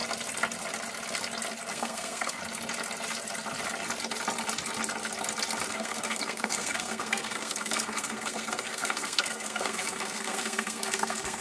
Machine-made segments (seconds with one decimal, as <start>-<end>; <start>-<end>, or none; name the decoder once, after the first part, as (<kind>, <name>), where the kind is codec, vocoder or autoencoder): 1.7-2.4 (codec, SNAC); 5.7-11.4